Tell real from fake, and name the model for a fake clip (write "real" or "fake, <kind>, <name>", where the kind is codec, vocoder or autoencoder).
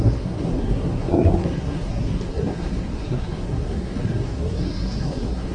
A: fake, codec, SNAC